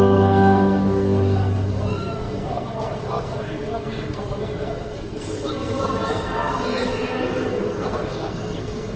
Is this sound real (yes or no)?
no